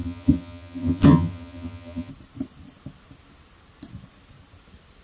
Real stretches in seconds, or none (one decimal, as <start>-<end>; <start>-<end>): 2.1-5.0